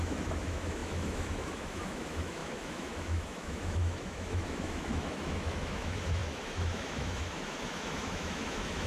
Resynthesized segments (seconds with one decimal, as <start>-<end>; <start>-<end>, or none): 0.0-8.9

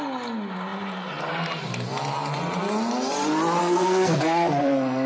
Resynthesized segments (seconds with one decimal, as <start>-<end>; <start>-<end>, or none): 3.6-5.1

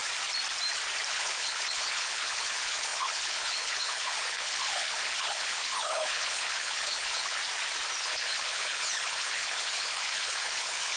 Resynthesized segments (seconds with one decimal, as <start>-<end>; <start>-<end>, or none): 1.1-7.4; 8.0-11.0